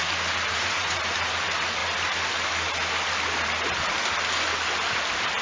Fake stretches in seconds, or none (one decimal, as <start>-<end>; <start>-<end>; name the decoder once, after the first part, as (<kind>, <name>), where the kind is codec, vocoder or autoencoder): 0.5-1.0 (vocoder, Vocos)